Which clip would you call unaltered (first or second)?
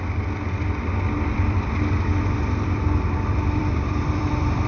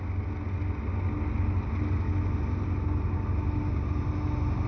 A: second